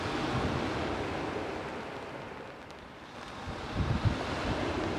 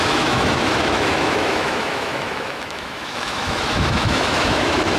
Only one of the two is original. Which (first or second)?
first